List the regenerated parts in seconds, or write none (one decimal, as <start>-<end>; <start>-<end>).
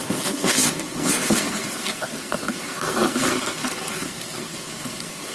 0.0-5.3